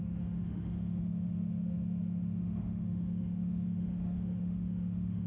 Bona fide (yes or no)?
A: no